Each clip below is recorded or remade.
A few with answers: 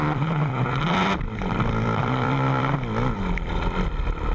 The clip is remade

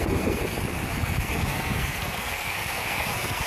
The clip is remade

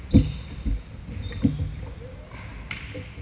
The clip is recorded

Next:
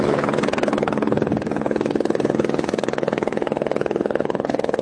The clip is remade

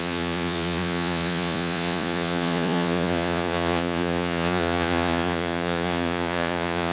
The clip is remade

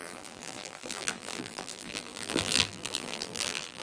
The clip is remade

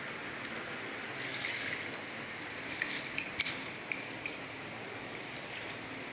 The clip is recorded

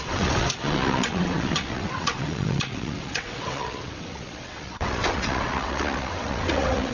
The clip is remade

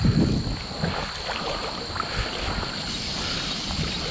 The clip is recorded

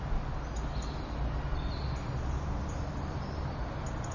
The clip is recorded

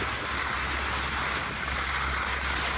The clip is recorded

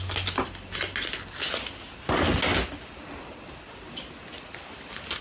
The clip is recorded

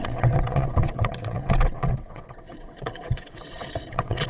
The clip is remade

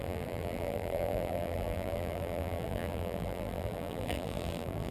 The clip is remade